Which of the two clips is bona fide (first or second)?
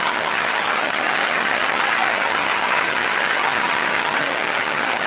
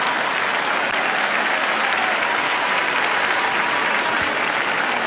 second